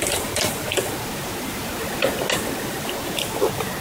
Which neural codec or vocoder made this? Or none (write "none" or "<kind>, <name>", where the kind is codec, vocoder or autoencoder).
none